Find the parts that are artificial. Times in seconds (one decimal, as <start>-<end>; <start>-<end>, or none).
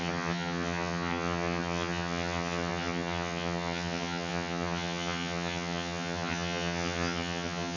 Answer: 0.0-7.8